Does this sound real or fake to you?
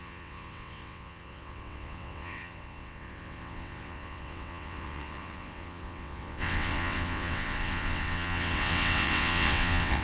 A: fake